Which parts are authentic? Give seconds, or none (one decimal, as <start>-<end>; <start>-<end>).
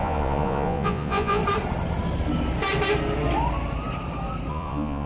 1.4-4.5